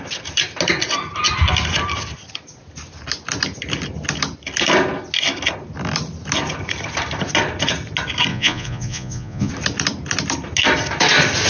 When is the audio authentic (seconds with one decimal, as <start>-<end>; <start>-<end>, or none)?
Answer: 0.0-8.3; 9.5-11.5